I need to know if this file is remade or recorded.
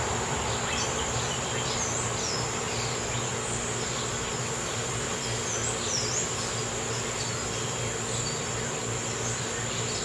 recorded